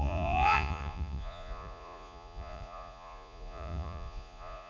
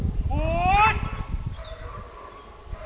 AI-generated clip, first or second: first